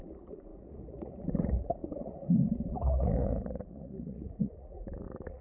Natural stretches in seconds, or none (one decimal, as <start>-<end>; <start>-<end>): none